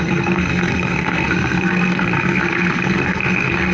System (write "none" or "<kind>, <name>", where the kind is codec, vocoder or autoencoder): codec, SNAC